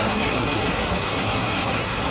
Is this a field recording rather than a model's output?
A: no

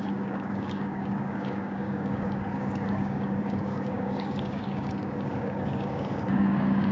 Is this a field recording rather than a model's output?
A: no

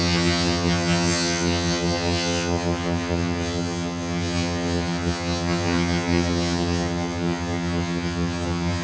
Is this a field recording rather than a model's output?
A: no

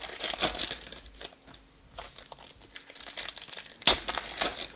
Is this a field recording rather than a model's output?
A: yes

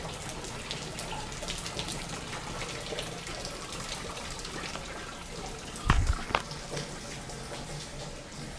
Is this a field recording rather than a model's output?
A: yes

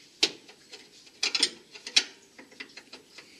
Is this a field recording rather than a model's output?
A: yes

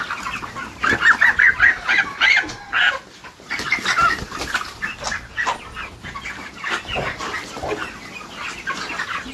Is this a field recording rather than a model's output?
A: yes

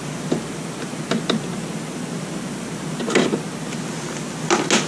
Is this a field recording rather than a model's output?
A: yes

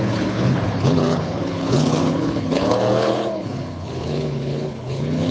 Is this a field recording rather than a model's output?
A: no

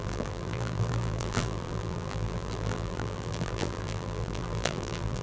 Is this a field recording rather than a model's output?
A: no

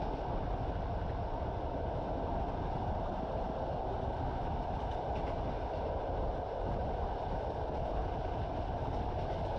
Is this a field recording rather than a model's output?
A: yes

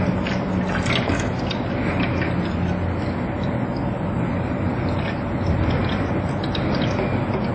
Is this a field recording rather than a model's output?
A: yes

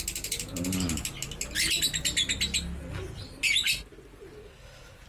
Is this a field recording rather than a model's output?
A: yes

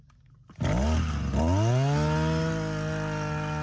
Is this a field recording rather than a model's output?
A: yes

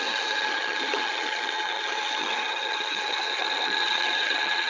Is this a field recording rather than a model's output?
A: no